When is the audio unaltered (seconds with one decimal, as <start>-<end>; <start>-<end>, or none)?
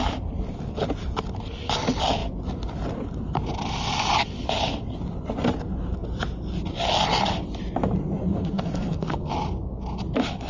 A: 0.0-8.3; 9.3-10.5